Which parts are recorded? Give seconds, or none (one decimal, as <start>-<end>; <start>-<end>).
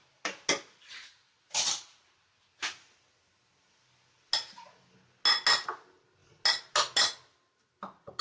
0.0-8.2